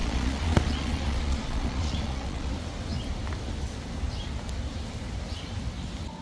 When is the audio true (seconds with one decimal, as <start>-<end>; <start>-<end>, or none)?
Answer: 2.5-6.2